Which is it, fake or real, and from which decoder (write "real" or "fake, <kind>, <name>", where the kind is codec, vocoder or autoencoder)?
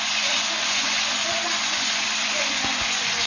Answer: fake, vocoder, Vocos